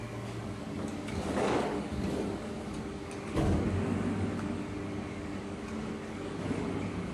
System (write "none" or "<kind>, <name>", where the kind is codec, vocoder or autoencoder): codec, DAC